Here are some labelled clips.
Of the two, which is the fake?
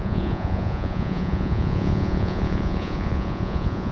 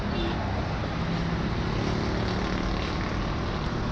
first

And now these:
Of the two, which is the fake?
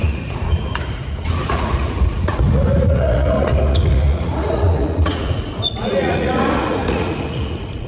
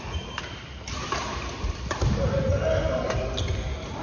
first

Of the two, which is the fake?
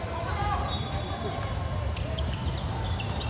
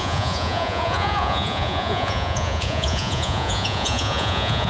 second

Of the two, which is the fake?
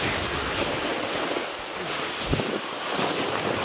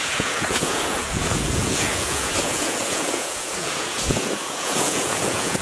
second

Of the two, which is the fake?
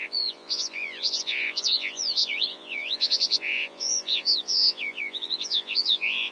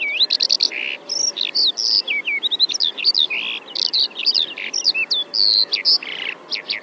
first